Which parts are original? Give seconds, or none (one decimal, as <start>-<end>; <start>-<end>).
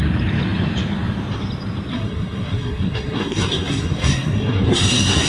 0.0-1.9